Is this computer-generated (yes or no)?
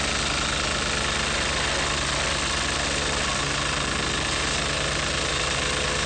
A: no